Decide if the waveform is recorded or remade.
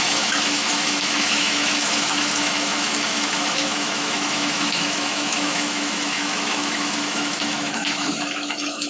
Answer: remade